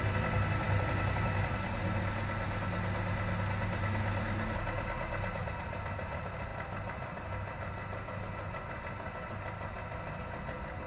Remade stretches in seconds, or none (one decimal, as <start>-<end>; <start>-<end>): none